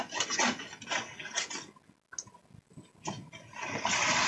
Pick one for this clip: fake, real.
real